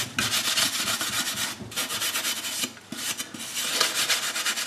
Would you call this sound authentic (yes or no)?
yes